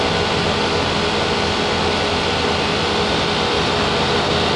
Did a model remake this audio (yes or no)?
no